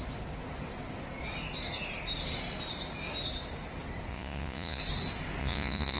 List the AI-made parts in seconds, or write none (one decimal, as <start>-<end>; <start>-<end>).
4.1-4.8; 5.4-6.0